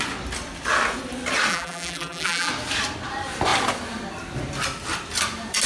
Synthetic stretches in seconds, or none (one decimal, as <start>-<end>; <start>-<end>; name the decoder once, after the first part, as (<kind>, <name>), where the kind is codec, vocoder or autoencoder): 1.5-2.5 (vocoder, BigVGAN v2)